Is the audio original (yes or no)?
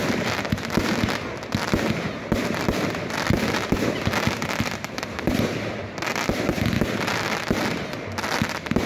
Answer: yes